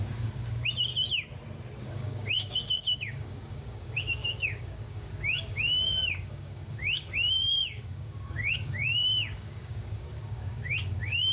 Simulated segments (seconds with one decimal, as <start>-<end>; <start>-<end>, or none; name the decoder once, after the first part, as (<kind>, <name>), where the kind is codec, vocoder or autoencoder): 0.0-0.9 (codec, DAC); 1.8-11.3